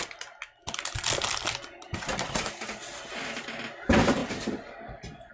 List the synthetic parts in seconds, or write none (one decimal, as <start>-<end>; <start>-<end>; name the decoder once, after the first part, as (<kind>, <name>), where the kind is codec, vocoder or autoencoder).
none